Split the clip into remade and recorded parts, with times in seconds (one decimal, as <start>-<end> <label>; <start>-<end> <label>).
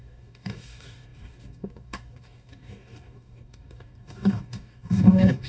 0.0-5.5 remade